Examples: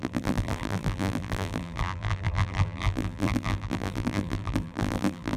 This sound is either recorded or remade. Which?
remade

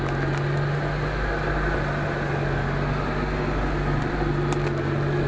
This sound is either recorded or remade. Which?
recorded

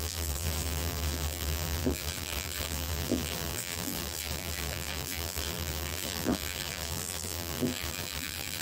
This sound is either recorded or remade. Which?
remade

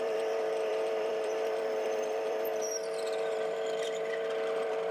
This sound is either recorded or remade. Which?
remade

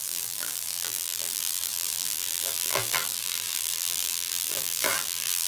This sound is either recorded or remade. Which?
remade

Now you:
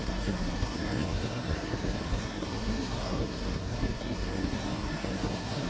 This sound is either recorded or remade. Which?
remade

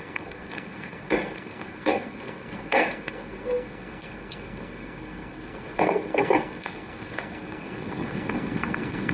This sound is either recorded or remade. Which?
remade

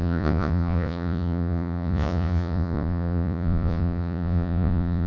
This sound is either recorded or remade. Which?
remade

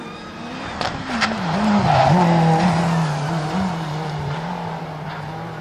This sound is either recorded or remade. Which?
recorded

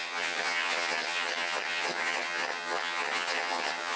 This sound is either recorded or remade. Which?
remade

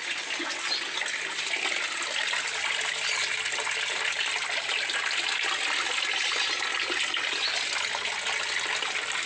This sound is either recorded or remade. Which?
recorded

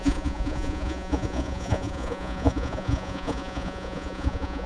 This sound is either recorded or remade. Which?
remade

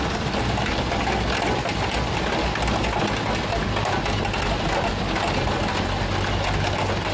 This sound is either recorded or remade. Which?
recorded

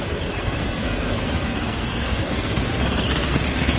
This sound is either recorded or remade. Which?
remade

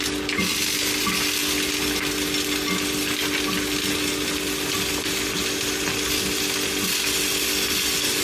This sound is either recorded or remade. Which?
recorded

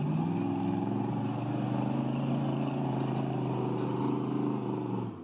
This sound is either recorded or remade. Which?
recorded